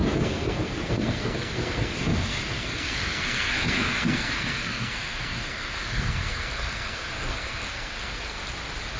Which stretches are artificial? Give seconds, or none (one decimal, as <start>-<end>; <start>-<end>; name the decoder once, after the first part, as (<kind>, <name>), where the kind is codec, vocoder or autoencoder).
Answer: 0.0-8.4 (codec, SNAC)